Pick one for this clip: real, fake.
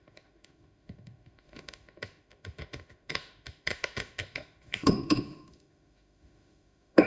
fake